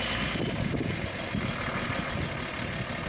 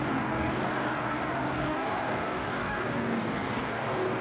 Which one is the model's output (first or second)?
second